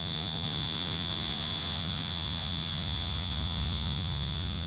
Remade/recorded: remade